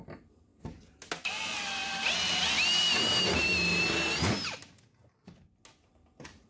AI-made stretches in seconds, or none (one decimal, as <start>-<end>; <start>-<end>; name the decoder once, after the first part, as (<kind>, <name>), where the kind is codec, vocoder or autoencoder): none